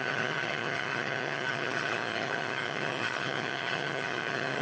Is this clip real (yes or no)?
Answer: no